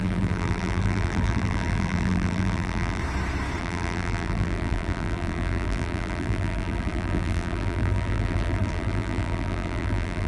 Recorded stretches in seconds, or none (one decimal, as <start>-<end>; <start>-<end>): 3.0-3.6